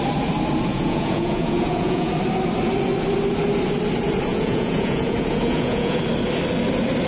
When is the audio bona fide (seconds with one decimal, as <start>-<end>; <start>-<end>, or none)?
0.0-0.7; 2.1-4.3; 6.0-7.1